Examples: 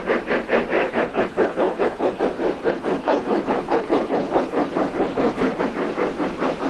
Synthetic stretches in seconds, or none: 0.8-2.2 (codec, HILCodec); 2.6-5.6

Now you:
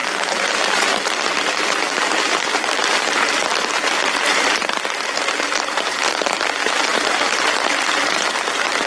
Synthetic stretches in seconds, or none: 0.0-8.9 (vocoder, BigVGAN v2)

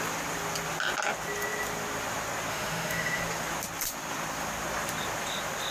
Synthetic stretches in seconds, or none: 2.5-3.2 (autoencoder, DAC-VAE)

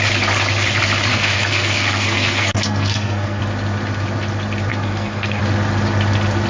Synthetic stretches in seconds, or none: 1.1-3.4 (codec, SNAC); 4.7-5.4

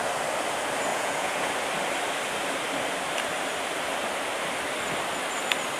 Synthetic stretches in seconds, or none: 0.9-1.5 (vocoder, Vocos)

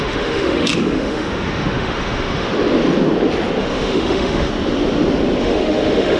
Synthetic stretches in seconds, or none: 0.0-2.5 (autoencoder, DAC-VAE); 3.6-4.5; 5.4-6.2

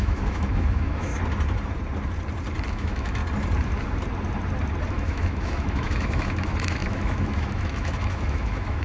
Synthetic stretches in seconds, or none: 0.0-1.1 (autoencoder, DAC-VAE); 2.7-3.2; 4.9-8.8

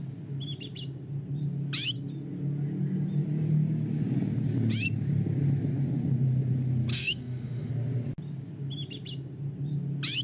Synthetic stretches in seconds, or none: 6.9-7.7 (autoencoder, DAC-VAE)